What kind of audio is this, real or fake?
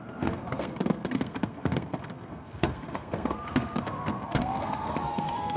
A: fake